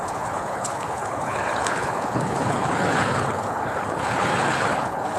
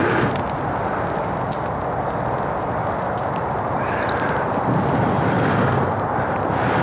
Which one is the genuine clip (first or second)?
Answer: second